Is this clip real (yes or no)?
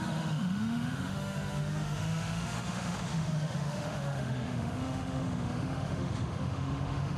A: no